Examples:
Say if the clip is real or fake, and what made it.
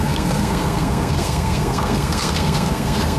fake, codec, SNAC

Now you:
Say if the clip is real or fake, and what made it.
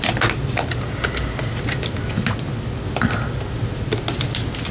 real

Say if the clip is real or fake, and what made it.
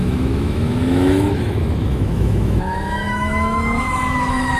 fake, autoencoder, DAC-VAE